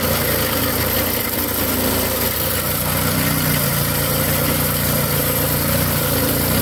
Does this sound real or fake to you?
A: fake